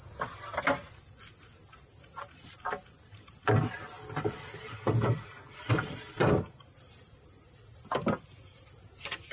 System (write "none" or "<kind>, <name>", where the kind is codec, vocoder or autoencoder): none